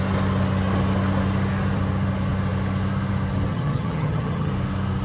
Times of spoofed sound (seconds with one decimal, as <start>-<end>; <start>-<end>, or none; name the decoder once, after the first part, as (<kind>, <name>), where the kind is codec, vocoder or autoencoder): 3.5-4.5 (vocoder, HiFi-GAN)